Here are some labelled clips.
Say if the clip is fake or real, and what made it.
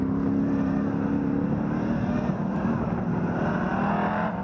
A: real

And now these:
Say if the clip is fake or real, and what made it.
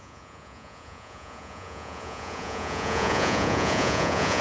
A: fake, vocoder, Vocos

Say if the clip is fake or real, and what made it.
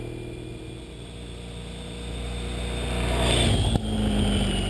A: real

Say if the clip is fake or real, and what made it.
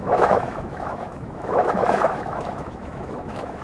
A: fake, autoencoder, DAC-VAE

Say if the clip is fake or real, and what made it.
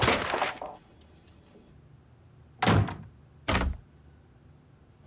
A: real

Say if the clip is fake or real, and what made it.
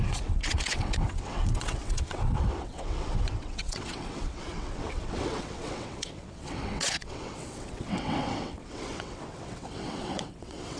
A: fake, vocoder, WaveNeXt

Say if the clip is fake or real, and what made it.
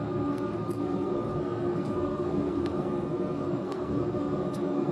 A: fake, codec, SNAC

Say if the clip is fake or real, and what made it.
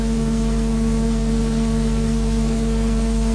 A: fake, codec, SNAC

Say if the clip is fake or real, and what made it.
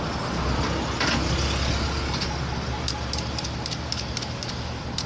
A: real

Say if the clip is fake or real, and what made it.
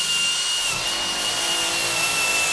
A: real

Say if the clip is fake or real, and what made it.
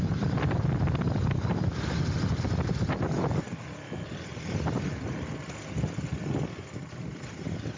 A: real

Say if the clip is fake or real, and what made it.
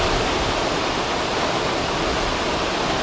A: real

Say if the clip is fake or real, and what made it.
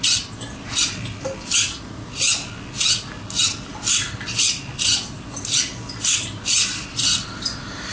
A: real